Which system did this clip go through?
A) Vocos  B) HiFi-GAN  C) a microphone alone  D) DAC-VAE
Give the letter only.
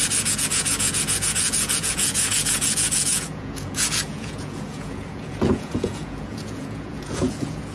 A